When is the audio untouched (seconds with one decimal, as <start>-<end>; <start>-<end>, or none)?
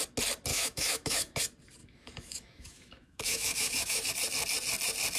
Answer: 0.0-0.5; 1.4-1.8; 4.1-5.2